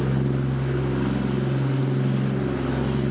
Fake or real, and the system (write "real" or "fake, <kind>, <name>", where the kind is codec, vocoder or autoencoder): real